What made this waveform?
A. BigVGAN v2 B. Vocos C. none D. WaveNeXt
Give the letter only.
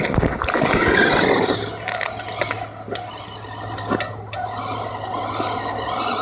C